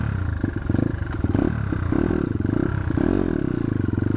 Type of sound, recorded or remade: recorded